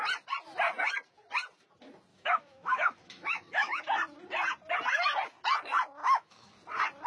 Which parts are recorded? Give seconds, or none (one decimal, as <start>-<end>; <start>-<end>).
0.0-2.1; 3.8-6.0; 6.5-7.1

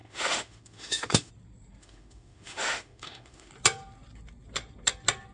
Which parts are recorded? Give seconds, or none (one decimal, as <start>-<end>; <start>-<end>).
1.3-1.8; 3.5-5.3

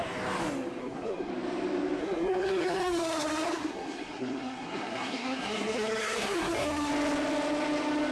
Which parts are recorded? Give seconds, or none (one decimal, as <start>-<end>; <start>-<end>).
0.0-0.8; 1.3-2.0; 6.9-8.1

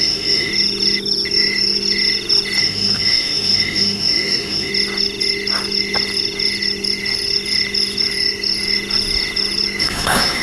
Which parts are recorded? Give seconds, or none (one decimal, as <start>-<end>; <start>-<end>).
0.5-2.6; 4.7-9.8

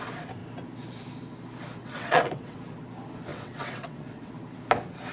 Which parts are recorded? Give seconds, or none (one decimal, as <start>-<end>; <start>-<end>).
0.0-1.8; 2.6-3.3; 4.3-5.1

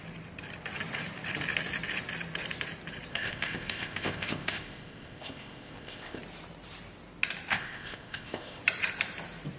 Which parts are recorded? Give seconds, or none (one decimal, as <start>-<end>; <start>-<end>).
0.0-3.1; 6.2-7.5; 8.6-9.6

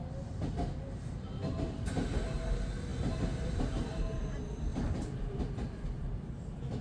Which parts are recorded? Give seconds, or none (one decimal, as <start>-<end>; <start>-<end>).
0.0-4.7; 5.4-6.8

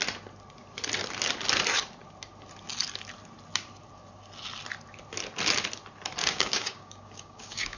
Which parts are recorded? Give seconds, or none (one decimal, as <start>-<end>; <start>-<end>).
0.0-6.2